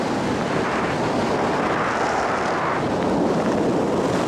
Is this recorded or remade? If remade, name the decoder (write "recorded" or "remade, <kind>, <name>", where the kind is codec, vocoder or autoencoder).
recorded